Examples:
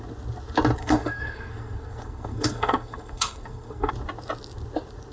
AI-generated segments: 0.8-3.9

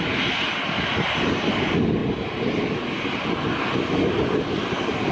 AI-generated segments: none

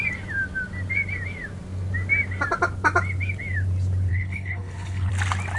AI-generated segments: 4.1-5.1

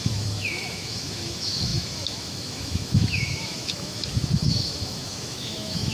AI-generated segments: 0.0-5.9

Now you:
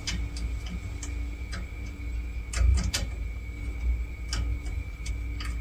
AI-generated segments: 2.7-3.6; 4.5-5.1

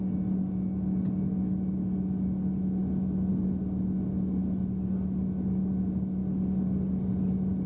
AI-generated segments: none